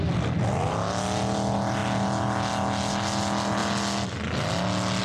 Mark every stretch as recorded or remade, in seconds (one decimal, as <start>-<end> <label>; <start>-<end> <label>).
0.0-5.0 recorded